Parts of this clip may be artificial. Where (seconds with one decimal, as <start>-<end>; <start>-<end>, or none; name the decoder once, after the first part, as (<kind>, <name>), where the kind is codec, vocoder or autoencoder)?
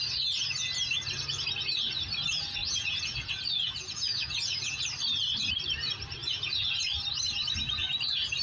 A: 2.6-4.9 (vocoder, Vocos); 6.2-6.8